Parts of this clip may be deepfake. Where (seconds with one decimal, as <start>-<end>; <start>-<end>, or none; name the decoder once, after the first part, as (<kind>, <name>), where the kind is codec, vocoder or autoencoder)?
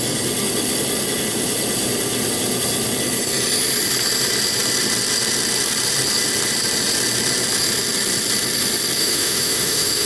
9.0-10.1 (autoencoder, DAC-VAE)